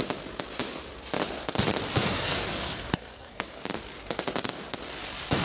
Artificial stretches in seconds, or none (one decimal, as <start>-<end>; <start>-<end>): 2.1-3.6